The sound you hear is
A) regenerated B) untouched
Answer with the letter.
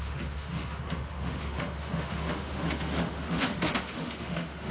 A